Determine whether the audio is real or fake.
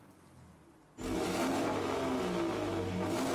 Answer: real